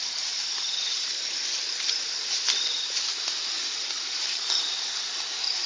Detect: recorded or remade remade